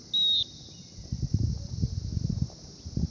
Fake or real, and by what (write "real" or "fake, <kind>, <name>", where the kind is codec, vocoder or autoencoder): real